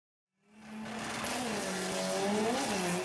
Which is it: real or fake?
real